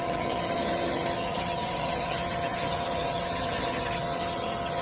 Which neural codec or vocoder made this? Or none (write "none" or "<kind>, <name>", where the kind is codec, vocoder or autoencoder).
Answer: vocoder, HiFi-GAN